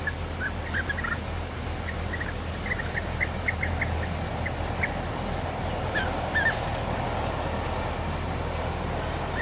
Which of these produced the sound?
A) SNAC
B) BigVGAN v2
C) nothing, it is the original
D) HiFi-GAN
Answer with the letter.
C